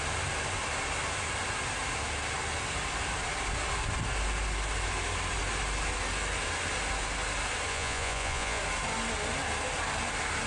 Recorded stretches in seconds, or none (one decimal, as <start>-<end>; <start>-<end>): 0.0-7.7; 8.6-10.5